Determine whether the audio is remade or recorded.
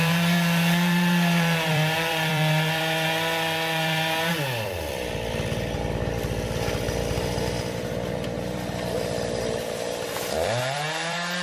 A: remade